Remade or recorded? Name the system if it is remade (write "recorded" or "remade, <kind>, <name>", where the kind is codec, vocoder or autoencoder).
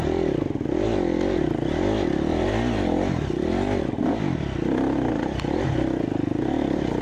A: recorded